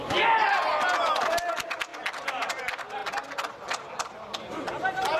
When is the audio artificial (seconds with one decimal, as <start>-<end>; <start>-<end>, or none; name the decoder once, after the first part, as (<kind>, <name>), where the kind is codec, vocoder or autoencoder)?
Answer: 1.9-2.6 (vocoder, BigVGAN v2)